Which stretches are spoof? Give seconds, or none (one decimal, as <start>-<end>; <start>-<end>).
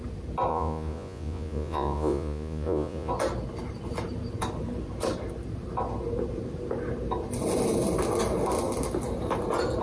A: 0.5-3.1